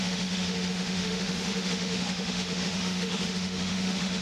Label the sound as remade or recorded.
remade